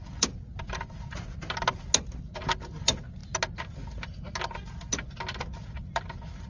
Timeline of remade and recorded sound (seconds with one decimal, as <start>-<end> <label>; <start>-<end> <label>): 0.0-6.5 recorded